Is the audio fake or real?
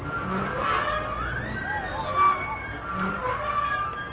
real